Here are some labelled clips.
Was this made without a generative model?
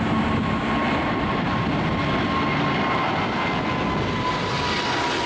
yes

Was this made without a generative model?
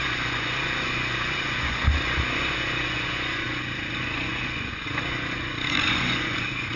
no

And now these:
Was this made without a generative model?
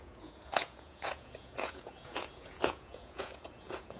no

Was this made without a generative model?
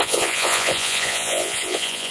no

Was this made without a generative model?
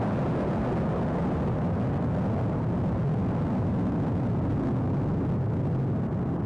yes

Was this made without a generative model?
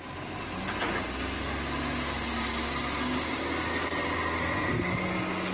yes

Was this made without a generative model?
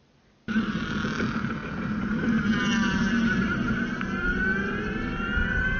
yes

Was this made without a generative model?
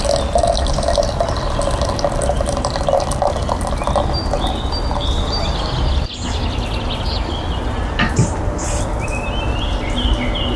yes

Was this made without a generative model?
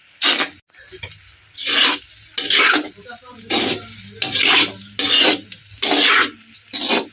yes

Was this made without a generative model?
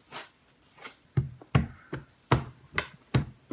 yes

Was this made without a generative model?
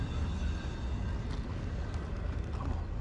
yes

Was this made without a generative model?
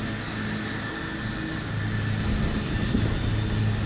yes